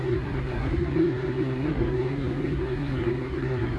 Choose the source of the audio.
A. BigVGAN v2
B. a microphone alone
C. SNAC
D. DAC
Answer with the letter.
C